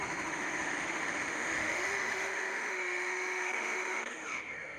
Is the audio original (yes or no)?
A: no